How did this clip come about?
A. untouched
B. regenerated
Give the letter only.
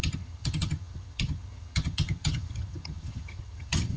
B